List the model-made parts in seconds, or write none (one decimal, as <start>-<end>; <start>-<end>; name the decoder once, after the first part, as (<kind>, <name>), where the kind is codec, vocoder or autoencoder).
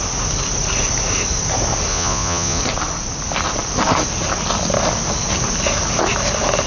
1.9-2.6 (vocoder, Vocos)